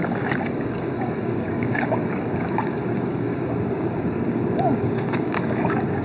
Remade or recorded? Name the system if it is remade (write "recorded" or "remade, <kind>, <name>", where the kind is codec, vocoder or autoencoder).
remade, codec, DAC